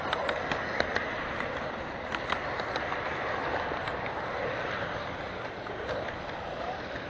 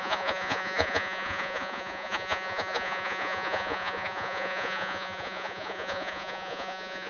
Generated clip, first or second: second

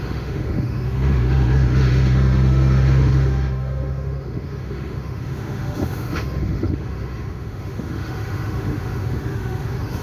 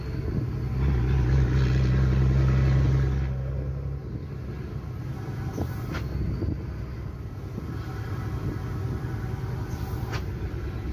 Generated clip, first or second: first